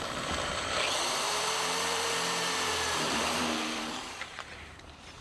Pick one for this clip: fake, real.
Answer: fake